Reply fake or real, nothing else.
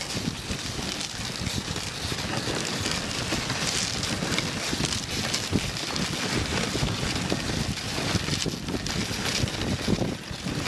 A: real